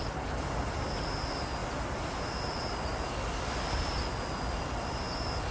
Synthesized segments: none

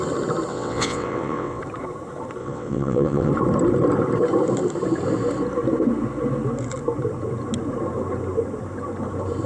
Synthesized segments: 0.5-1.6 (vocoder, WaveNeXt); 2.4-3.3

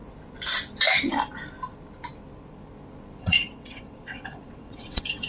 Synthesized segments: 3.2-5.3 (vocoder, WaveNeXt)

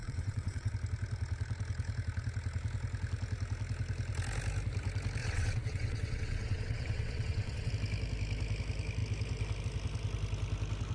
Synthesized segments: 0.0-0.7 (vocoder, WaveNeXt); 5.2-7.7